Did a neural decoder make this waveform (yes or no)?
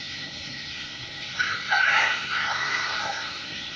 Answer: yes